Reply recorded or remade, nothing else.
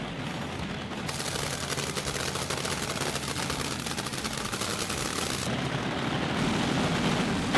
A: recorded